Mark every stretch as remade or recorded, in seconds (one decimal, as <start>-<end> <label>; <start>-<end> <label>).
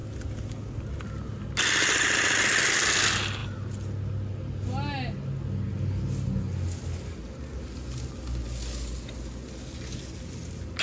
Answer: 0.0-10.8 recorded